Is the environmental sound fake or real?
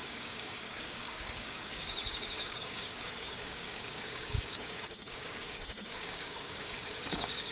fake